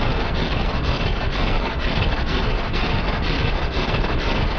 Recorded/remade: remade